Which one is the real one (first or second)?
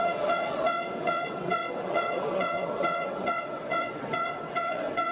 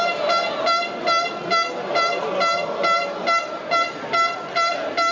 second